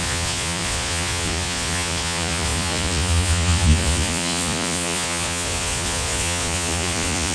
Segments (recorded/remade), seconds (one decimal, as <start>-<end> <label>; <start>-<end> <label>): 0.0-7.3 remade